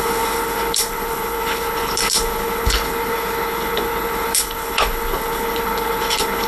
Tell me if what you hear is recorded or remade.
remade